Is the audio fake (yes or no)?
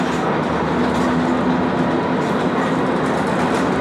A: no